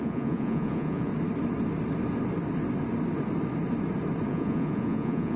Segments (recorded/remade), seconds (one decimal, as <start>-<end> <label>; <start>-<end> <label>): 0.0-1.1 remade; 1.1-4.3 recorded; 4.3-5.4 remade